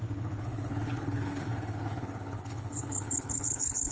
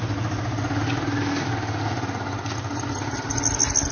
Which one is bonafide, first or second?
second